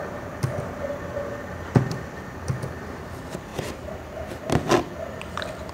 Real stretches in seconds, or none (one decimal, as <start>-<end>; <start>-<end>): 0.0-5.7